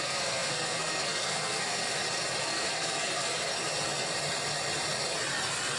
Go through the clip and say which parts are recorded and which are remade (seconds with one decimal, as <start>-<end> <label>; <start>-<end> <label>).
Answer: 0.0-1.8 remade; 1.8-2.4 recorded; 2.4-3.5 remade; 3.5-5.8 recorded